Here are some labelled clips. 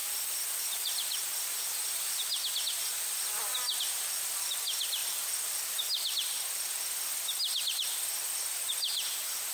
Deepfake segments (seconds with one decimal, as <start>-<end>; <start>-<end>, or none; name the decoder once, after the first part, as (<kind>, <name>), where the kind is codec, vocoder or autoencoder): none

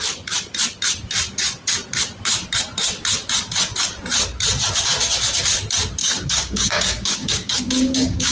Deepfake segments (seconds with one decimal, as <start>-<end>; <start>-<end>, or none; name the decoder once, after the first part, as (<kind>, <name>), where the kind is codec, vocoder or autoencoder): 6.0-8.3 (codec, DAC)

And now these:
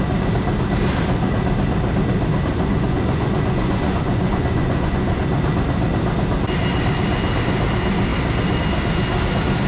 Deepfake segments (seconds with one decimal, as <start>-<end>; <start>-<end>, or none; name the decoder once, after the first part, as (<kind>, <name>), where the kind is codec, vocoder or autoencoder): 2.5-5.2 (vocoder, Vocos)